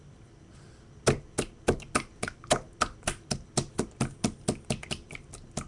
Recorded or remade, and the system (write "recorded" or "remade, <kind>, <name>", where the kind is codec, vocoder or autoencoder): recorded